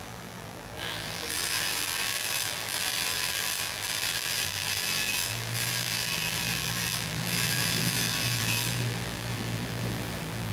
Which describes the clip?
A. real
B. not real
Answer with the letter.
B